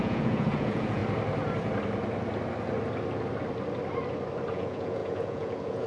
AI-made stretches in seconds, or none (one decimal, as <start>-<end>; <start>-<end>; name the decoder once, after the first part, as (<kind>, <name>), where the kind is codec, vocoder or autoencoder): 0.0-1.0 (vocoder, Vocos); 4.5-5.9